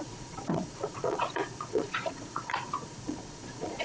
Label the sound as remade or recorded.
remade